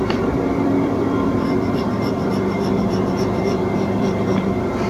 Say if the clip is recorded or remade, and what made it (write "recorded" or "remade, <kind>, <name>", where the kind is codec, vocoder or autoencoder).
remade, vocoder, BigVGAN v2